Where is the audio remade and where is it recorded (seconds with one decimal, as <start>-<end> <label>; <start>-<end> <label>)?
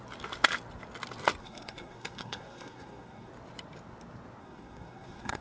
0.0-1.4 recorded; 1.4-3.3 remade; 3.3-4.4 recorded; 4.4-5.4 remade